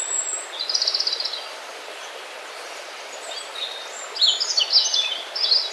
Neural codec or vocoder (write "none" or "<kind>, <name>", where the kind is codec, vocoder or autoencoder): none